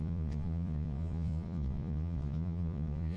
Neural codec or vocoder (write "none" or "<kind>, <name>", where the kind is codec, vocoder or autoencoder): vocoder, Vocos